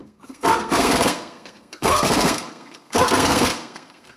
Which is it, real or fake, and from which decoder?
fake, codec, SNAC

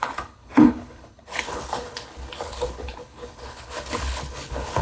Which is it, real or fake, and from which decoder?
fake, codec, HILCodec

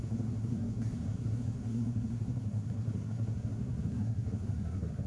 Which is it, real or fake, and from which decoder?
fake, codec, SNAC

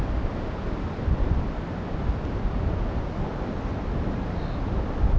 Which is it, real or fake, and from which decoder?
real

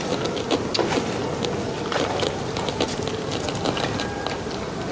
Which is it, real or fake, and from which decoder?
real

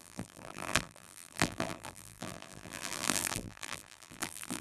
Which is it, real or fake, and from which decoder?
fake, vocoder, BigVGAN v2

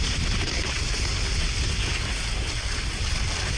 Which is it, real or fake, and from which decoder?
real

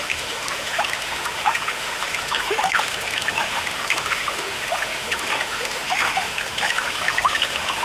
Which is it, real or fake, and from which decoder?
fake, autoencoder, DAC-VAE